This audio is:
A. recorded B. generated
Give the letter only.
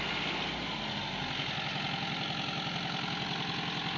A